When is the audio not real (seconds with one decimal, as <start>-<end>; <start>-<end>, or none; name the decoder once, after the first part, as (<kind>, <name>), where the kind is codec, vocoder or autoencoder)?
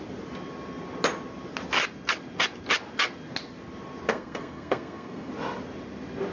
4.1-5.3 (codec, SNAC)